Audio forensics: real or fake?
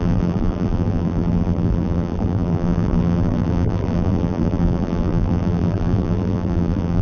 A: fake